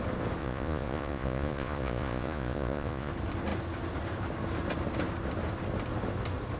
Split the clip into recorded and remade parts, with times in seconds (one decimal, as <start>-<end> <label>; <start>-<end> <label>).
0.0-0.4 recorded; 0.4-3.1 remade; 3.1-6.6 recorded